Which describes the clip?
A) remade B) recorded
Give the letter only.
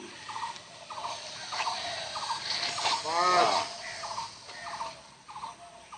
B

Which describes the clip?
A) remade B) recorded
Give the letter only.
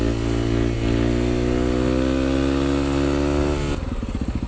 B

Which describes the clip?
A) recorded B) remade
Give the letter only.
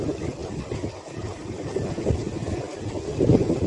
A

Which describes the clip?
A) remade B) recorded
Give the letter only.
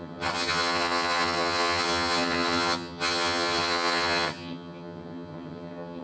A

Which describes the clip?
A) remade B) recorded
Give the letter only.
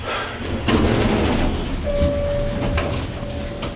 B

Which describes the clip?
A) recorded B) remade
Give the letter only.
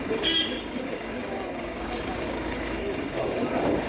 B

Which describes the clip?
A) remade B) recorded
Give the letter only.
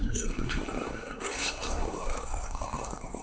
A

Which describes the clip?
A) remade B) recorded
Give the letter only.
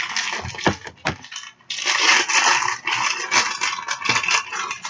B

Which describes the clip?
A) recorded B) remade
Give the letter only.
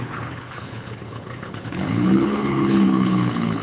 B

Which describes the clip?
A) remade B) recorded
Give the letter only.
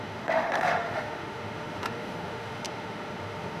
A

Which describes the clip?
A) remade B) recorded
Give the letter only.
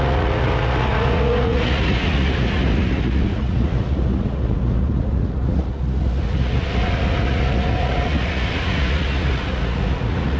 A